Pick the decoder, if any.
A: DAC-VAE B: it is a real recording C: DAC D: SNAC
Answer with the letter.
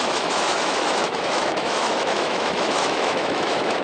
A